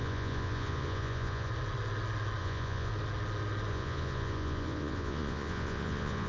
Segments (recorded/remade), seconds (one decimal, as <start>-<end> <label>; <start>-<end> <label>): 0.0-1.5 remade; 1.5-2.4 recorded; 2.4-2.9 remade; 2.9-3.7 recorded; 3.7-6.3 remade